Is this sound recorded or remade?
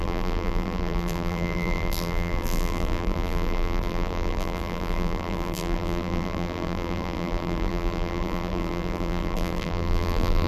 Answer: remade